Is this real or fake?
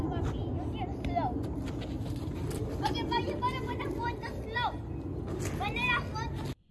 real